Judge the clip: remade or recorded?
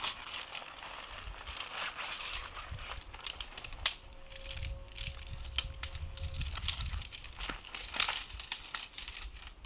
recorded